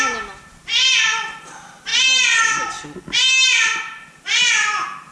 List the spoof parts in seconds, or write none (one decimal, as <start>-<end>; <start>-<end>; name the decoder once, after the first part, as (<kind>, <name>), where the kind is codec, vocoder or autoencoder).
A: none